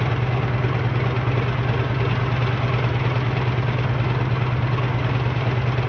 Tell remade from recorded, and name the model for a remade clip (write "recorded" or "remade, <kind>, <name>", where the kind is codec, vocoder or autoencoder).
recorded